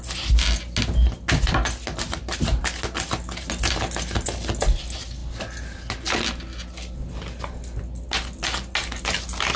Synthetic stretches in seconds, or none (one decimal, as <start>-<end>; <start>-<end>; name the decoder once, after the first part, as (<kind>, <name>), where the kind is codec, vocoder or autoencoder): none